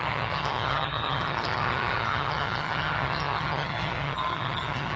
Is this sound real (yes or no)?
no